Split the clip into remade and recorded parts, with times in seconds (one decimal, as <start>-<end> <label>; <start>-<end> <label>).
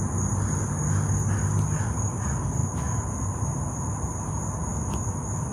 0.0-2.6 recorded; 2.6-3.1 remade; 3.1-5.5 recorded